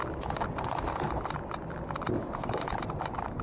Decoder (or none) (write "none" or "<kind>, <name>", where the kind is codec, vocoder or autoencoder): none